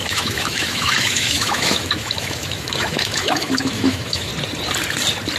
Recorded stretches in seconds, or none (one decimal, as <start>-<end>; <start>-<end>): 4.3-5.4